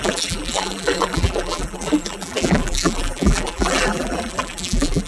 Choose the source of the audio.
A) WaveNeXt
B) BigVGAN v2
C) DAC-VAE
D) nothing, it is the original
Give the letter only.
B